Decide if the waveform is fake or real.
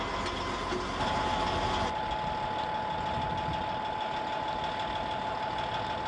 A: real